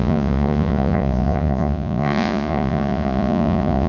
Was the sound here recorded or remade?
remade